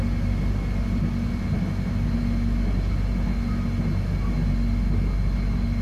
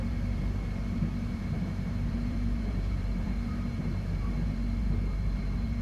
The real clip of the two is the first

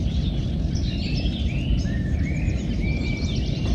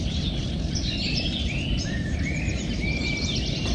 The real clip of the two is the first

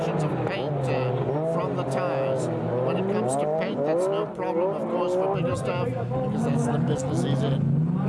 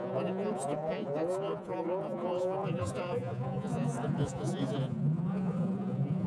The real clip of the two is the first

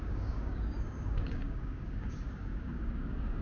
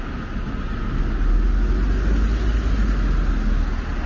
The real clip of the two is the second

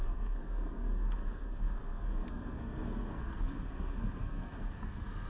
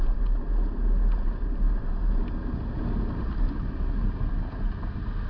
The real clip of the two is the second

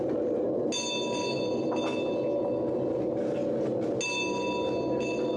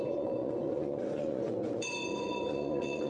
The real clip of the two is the first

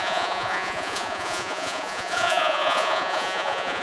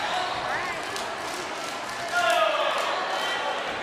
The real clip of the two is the second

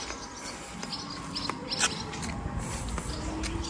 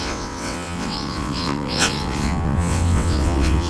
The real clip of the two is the first